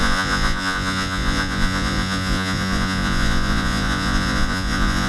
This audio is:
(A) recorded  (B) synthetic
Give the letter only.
B